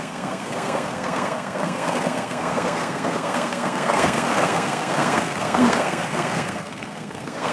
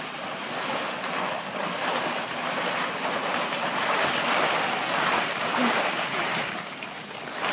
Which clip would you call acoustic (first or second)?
second